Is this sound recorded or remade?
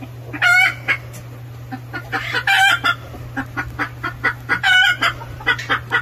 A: recorded